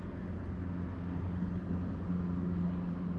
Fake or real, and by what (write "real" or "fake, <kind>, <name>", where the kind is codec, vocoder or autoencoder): real